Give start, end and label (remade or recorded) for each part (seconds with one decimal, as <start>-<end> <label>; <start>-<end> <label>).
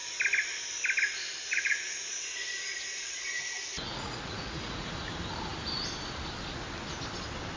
0.0-1.5 recorded; 1.5-4.9 remade; 4.9-7.6 recorded